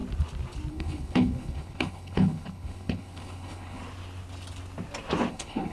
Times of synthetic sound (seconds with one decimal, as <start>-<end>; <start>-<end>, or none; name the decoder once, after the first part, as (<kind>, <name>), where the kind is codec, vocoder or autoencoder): 0.7-3.8 (codec, HILCodec); 5.3-5.7